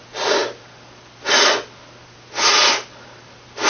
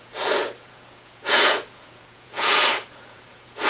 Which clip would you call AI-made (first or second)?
second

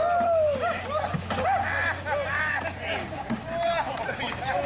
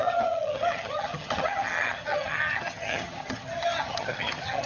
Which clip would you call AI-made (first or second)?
second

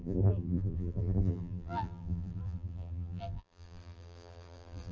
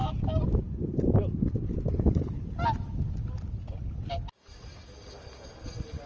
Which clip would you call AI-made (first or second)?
first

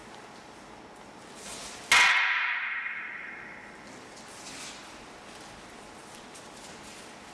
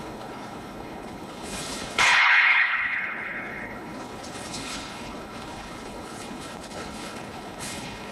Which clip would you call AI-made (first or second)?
second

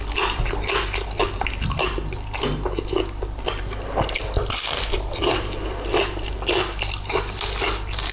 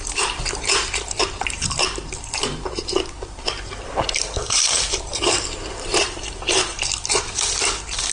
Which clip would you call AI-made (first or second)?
second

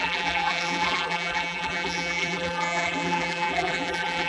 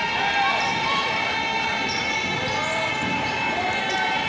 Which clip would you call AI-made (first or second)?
first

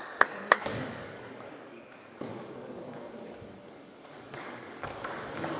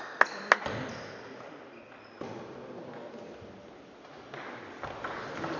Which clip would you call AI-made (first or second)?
first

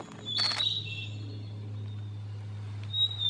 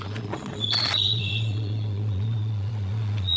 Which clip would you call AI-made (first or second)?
second